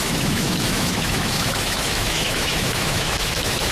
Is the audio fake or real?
fake